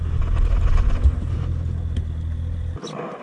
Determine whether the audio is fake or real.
real